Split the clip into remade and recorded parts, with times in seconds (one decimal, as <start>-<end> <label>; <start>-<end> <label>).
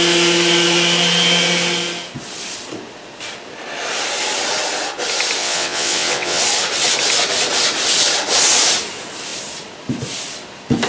0.0-5.4 recorded; 5.4-6.4 remade; 6.4-10.9 recorded